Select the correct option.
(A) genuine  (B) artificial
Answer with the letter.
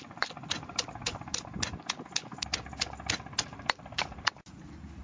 A